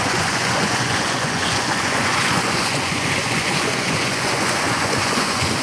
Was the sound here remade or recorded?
remade